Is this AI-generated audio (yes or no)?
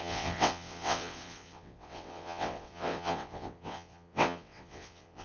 yes